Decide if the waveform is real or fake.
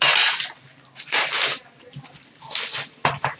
real